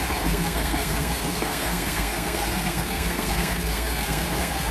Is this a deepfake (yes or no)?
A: yes